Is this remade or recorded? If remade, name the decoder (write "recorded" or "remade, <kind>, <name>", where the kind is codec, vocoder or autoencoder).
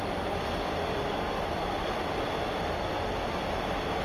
recorded